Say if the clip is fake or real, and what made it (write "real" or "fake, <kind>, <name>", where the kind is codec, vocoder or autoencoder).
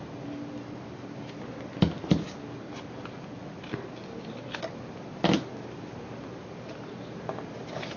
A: real